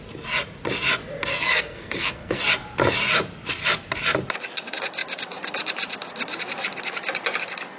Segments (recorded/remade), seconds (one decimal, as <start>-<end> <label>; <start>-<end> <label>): 0.0-1.3 recorded; 1.3-2.4 remade; 2.4-7.8 recorded